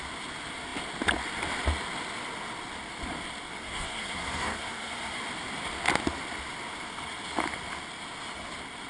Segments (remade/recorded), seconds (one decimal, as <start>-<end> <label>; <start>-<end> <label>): 0.0-3.6 recorded; 3.6-5.2 remade; 5.2-8.9 recorded